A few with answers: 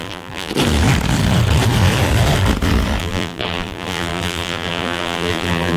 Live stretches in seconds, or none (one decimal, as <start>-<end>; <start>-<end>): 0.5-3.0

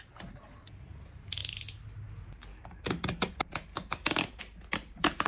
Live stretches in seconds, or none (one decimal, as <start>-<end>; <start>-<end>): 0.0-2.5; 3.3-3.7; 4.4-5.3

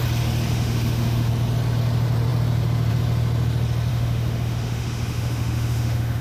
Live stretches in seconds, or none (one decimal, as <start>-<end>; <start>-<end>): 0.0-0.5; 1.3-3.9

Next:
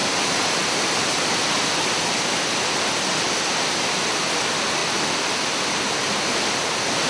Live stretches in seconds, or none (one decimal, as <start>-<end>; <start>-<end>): 0.0-7.1